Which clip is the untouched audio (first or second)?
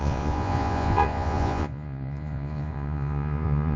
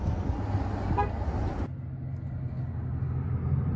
second